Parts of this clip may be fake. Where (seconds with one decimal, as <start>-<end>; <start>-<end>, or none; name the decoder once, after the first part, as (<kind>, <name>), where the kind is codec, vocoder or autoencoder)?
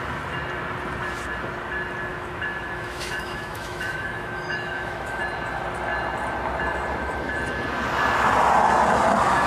2.1-5.2 (autoencoder, DAC-VAE)